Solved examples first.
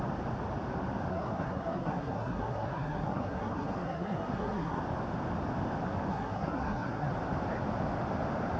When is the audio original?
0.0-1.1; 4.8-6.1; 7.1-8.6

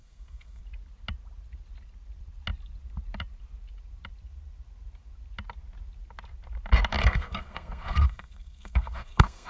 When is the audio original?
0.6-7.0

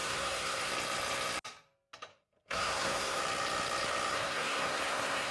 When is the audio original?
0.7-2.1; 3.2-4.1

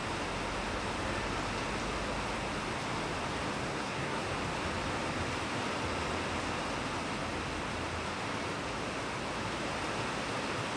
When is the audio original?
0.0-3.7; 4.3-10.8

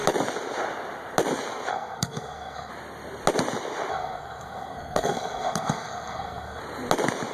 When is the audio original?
0.0-1.7; 2.7-3.9; 6.6-7.3

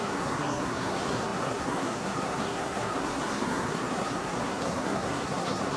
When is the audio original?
none

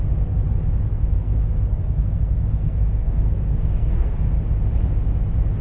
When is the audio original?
0.0-0.9; 4.3-5.6

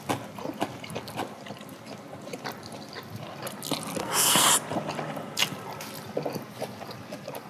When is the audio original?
0.0-4.0; 4.5-7.5